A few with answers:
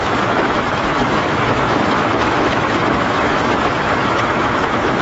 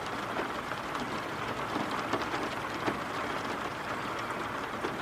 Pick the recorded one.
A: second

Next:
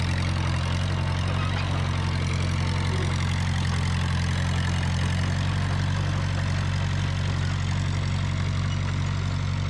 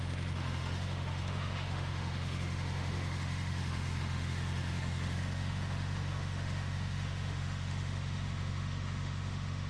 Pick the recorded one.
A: first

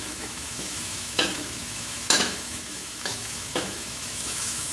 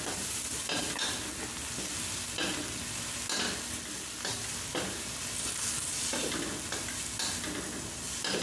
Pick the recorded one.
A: second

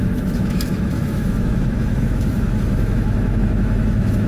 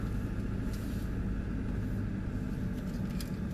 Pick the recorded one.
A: second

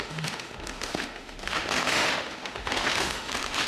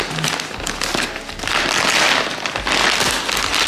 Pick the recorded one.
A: second